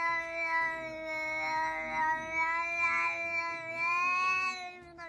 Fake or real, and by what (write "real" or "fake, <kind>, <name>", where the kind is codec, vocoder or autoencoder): real